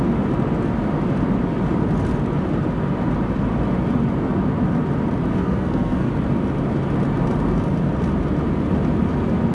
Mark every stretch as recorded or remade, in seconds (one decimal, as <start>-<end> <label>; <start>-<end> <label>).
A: 0.0-5.3 recorded; 5.3-6.1 remade; 6.1-9.5 recorded